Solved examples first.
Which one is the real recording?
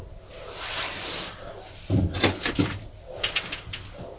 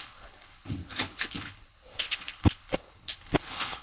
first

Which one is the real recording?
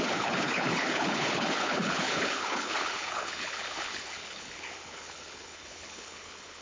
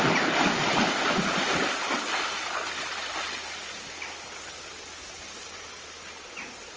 second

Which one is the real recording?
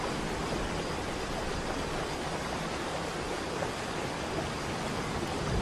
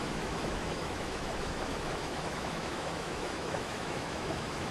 first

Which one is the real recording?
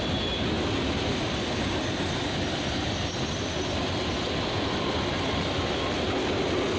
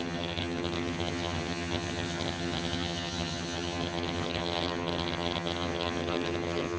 first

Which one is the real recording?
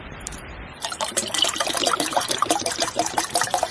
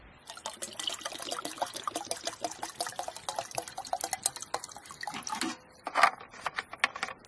second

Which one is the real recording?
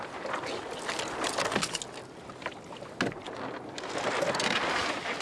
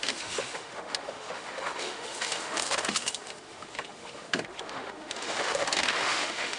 first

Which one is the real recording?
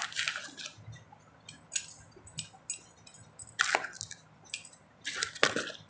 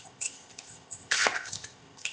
first